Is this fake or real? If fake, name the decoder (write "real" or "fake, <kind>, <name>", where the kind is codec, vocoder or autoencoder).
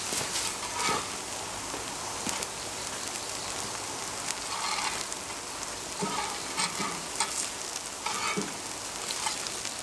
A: real